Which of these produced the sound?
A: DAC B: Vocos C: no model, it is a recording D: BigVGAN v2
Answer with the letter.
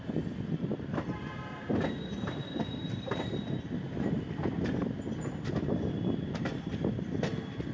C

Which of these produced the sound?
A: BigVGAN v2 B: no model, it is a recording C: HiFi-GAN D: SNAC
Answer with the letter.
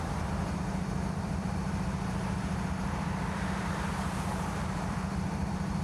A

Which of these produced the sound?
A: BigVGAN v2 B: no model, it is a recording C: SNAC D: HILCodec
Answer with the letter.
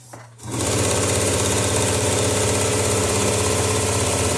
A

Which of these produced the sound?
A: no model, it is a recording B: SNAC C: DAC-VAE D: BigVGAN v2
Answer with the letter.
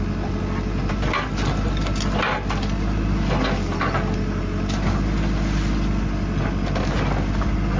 A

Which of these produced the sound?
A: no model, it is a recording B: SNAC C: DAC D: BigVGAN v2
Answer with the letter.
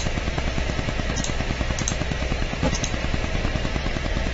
D